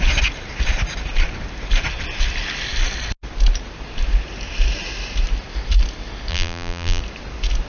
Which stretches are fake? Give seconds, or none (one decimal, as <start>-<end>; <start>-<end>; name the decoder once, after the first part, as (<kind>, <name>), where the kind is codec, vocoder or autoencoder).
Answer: 6.3-7.0 (vocoder, BigVGAN v2)